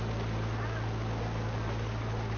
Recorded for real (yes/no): yes